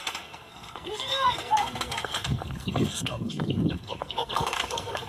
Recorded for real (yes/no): no